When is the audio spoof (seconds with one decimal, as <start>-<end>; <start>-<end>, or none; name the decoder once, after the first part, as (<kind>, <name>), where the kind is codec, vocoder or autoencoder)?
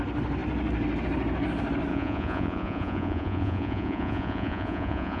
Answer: 1.9-5.2 (vocoder, Vocos)